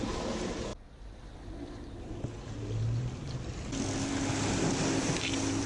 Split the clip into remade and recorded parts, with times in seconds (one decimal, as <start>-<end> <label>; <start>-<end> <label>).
0.0-5.7 recorded